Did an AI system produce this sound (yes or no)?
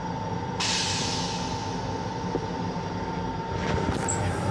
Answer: no